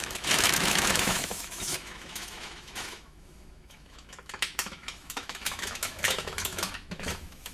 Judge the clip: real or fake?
fake